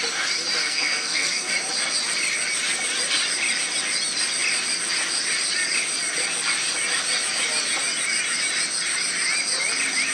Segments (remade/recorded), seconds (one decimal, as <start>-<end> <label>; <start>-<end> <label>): 0.0-0.6 recorded; 0.6-1.5 remade; 1.5-10.1 recorded